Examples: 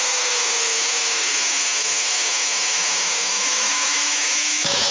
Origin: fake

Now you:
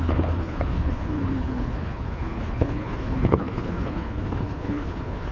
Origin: fake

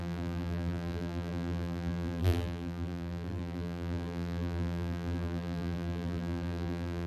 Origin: fake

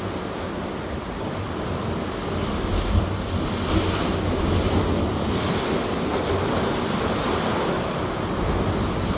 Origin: real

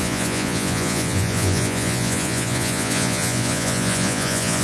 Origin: fake